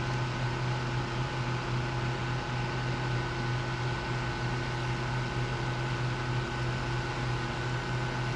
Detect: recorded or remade recorded